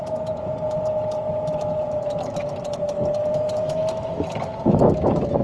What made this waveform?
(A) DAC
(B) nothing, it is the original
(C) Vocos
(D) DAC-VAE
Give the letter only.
D